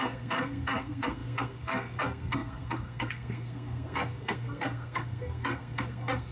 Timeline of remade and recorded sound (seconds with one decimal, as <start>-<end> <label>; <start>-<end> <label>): 0.0-6.3 remade